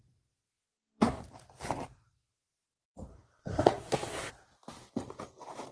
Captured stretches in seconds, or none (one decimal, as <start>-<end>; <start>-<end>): 0.0-0.6; 1.2-3.1; 4.3-5.7